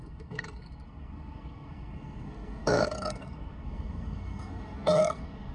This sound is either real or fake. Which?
fake